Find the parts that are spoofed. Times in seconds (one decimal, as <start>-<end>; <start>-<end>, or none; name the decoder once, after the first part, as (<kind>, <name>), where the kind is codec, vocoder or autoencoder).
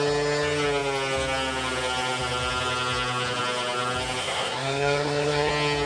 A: 4.2-5.5 (codec, SNAC)